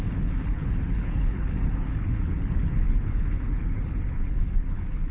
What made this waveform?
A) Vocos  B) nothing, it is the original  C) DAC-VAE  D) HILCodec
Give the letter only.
D